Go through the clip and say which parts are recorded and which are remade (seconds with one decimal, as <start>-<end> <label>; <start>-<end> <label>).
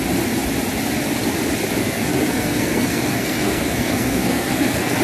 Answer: 0.0-1.8 recorded; 1.8-5.0 remade